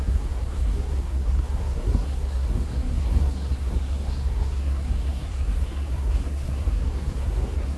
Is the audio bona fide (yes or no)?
no